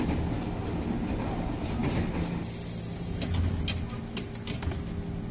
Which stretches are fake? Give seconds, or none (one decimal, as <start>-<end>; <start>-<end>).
none